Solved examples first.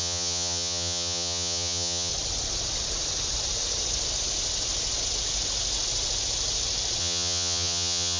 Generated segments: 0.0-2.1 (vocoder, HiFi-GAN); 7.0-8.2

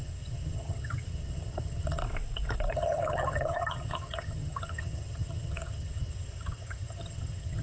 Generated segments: 0.0-2.0 (vocoder, HiFi-GAN); 2.7-7.6

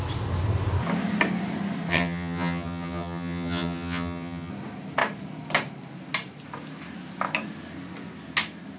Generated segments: 1.9-4.5 (vocoder, HiFi-GAN)

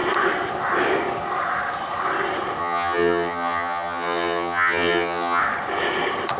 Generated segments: 2.6-5.4 (vocoder, HiFi-GAN)

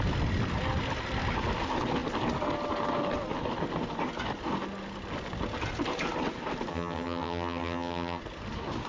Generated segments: 6.7-8.2 (vocoder, HiFi-GAN)